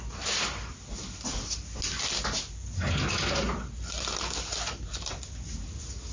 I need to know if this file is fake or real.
real